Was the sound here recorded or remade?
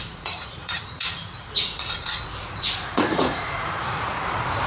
remade